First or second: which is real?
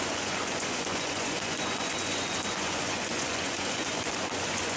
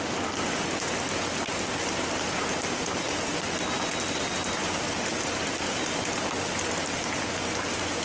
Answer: second